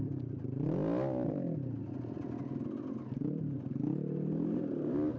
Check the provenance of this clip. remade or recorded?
recorded